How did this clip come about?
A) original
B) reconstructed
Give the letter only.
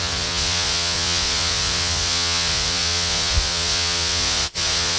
B